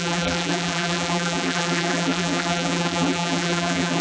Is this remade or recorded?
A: remade